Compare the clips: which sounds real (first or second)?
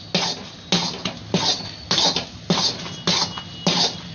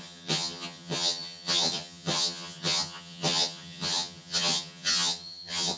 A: first